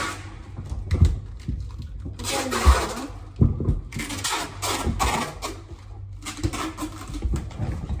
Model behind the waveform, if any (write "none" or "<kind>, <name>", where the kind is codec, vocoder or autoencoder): none